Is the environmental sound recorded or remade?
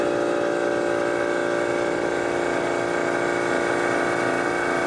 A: recorded